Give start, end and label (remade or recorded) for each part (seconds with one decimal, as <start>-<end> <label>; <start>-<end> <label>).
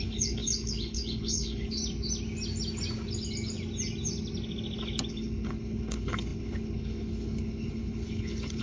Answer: 0.0-1.8 remade; 1.8-5.1 recorded; 5.1-8.6 remade